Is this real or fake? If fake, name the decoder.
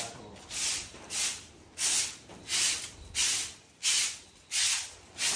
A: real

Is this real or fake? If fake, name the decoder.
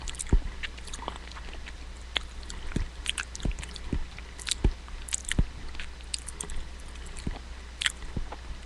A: real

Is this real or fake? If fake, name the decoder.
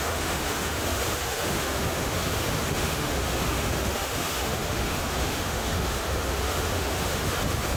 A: fake, autoencoder, DAC-VAE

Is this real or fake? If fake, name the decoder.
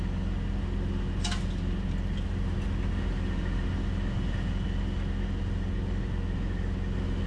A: real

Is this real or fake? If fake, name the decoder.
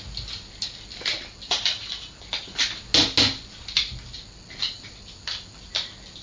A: real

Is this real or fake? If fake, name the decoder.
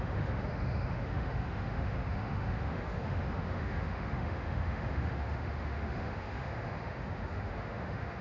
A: fake, autoencoder, DAC-VAE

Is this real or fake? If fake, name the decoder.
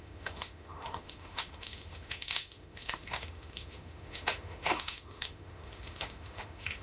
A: fake, autoencoder, DAC-VAE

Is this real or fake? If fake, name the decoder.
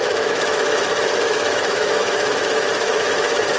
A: fake, autoencoder, DAC-VAE